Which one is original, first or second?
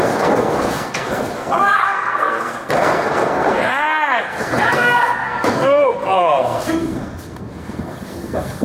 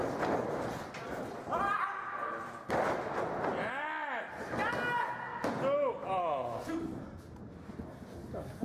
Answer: second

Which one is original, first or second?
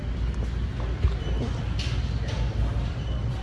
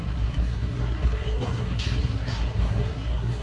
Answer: first